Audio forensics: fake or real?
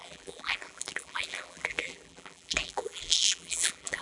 fake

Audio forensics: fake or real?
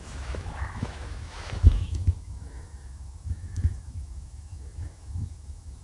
fake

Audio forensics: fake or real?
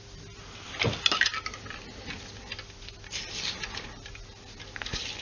real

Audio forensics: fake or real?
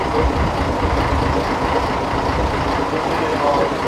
real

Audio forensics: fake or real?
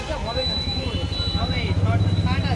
real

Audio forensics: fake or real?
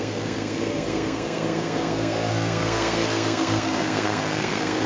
fake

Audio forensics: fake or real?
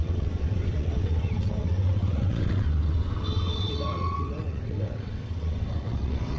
fake